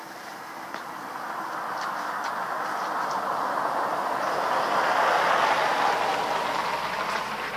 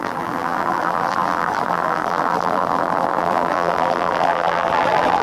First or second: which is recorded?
first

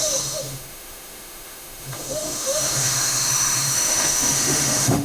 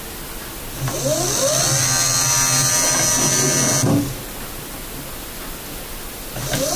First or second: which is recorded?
second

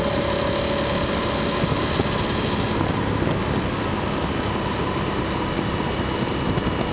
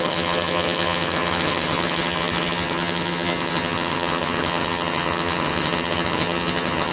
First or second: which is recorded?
first